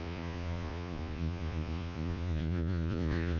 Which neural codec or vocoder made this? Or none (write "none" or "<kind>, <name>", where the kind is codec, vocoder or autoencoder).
vocoder, Vocos